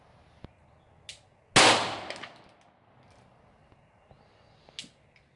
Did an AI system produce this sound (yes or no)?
no